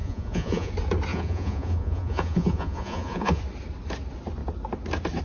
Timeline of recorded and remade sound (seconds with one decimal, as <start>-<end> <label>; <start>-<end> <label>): 0.0-0.7 remade; 0.7-1.1 recorded; 1.1-3.4 remade; 3.4-5.2 recorded